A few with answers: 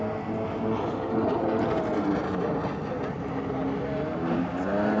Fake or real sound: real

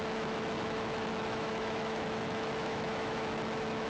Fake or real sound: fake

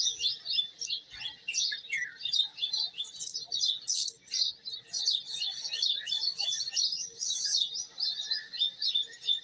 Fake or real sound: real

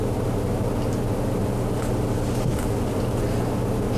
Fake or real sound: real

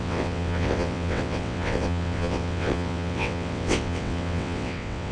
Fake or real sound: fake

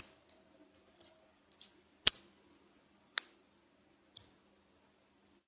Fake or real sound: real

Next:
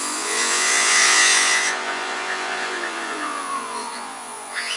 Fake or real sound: fake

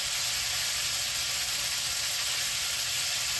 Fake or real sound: real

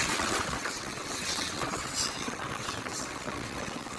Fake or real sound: fake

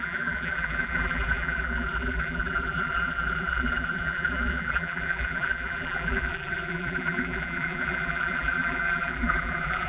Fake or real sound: fake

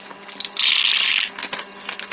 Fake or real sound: real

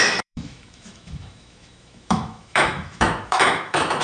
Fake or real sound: fake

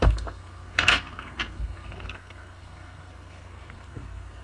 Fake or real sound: fake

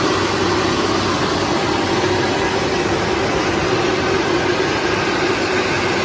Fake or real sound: real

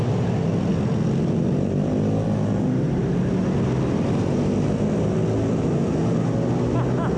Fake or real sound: real